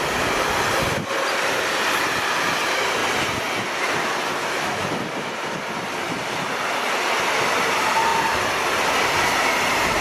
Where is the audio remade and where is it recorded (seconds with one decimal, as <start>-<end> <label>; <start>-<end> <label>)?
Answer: 0.0-4.4 recorded; 4.4-4.9 remade; 4.9-10.0 recorded